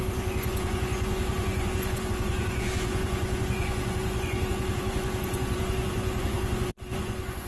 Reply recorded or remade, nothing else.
remade